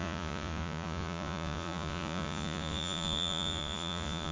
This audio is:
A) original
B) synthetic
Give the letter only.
B